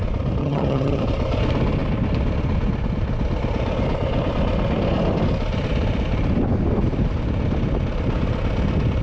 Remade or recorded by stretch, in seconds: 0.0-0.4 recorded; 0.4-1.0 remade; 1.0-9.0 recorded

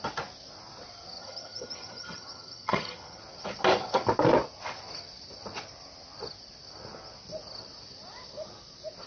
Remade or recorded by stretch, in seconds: 0.0-1.2 recorded; 1.2-3.2 remade; 3.2-9.1 recorded

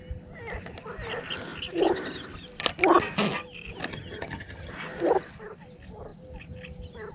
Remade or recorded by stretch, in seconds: 0.0-3.9 recorded; 3.9-4.7 remade; 4.7-7.1 recorded

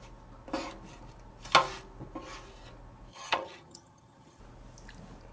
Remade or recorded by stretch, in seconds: 0.0-3.1 recorded; 3.1-4.4 remade; 4.4-5.3 recorded

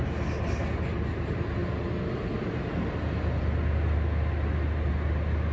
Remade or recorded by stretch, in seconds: 0.0-5.5 recorded

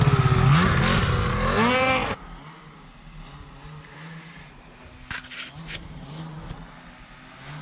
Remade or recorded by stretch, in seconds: 0.0-7.6 recorded

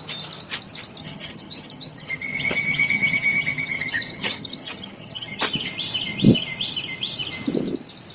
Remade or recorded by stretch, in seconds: 0.0-1.0 recorded; 1.0-5.4 remade; 5.4-8.1 recorded